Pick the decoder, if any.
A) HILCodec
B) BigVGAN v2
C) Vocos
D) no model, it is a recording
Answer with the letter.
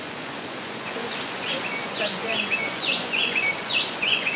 C